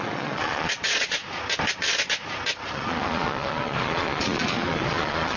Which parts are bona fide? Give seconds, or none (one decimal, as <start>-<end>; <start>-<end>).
1.2-2.7